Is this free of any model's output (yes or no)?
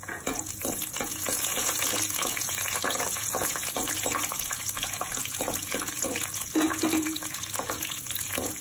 no